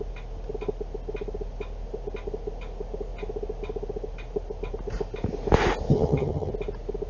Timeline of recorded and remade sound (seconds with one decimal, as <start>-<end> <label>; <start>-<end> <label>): 0.0-5.9 recorded; 5.9-6.5 remade; 6.5-7.1 recorded